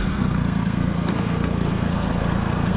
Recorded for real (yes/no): no